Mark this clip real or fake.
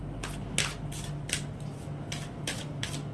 real